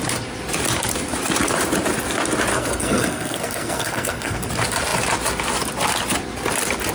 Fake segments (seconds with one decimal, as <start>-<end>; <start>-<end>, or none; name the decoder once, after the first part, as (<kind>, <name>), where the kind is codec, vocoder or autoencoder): 2.5-4.5 (codec, SNAC)